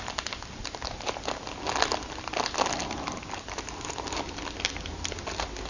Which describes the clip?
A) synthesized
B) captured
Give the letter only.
B